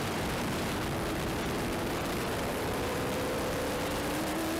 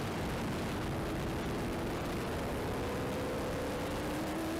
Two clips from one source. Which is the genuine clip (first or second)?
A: second